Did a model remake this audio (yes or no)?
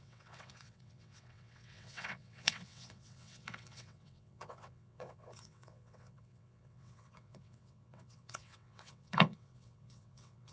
yes